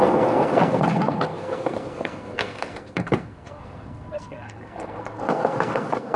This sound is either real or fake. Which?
fake